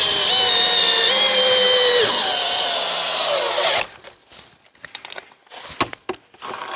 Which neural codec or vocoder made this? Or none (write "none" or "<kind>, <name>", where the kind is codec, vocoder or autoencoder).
none